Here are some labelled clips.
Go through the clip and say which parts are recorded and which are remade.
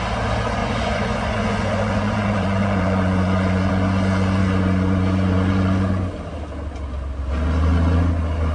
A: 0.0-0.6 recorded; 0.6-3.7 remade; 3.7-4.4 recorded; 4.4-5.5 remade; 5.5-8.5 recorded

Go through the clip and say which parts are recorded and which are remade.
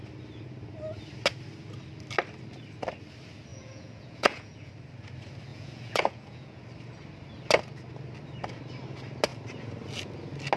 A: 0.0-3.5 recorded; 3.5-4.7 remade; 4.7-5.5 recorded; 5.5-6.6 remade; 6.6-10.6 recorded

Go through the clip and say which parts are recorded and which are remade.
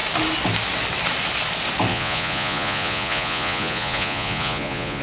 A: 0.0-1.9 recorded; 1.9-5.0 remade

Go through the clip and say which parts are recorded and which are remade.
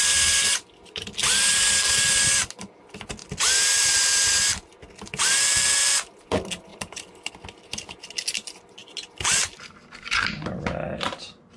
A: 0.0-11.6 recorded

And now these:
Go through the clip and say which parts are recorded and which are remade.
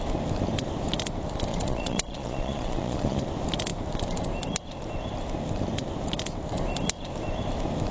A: 0.0-1.5 recorded; 1.5-3.2 remade; 3.2-7.9 recorded